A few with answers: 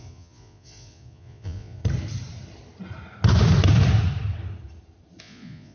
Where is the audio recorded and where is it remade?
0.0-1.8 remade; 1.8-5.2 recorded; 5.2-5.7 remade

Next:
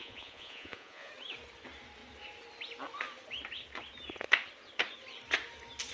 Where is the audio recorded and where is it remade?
0.0-1.1 remade; 1.1-5.9 recorded

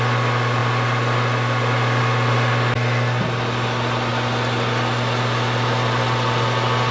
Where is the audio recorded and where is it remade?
0.0-6.9 recorded

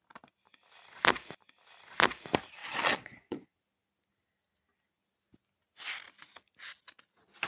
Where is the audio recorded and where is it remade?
0.0-2.6 recorded; 2.6-3.6 remade; 3.6-7.5 recorded

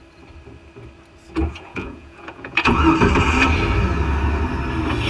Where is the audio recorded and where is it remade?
0.0-1.4 recorded; 1.4-2.8 remade; 2.8-5.1 recorded

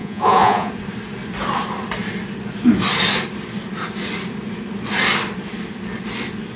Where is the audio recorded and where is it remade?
0.0-0.7 remade; 0.7-6.6 recorded